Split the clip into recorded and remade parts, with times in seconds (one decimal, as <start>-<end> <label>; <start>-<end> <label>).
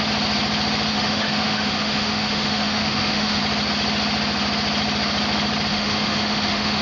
0.0-0.9 recorded; 0.9-3.4 remade; 3.4-5.7 recorded; 5.7-6.8 remade